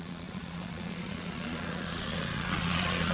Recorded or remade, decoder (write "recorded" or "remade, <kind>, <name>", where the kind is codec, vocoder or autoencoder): remade, vocoder, Vocos